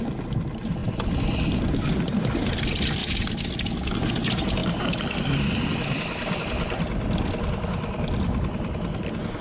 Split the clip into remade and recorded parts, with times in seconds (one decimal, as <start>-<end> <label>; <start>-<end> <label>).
0.0-4.6 recorded; 4.6-7.3 remade; 7.3-9.4 recorded